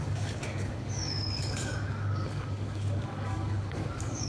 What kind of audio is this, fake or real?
fake